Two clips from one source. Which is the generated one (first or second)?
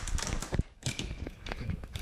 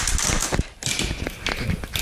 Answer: first